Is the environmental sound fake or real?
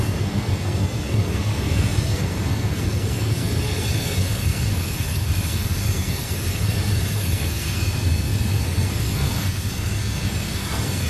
fake